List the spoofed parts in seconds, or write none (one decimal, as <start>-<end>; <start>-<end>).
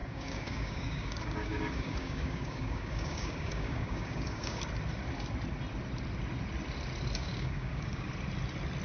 0.0-4.6; 7.2-8.1